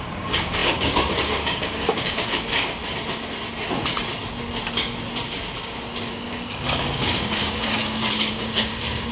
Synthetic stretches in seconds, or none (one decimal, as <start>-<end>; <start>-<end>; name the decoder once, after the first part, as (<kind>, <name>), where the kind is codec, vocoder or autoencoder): 0.0-2.8 (codec, DAC); 6.1-9.1